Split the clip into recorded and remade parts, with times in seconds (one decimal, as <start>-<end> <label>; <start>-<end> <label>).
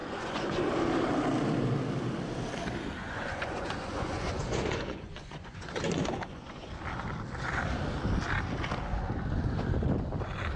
0.0-0.6 remade; 0.6-3.0 recorded; 3.0-6.7 remade; 6.7-10.6 recorded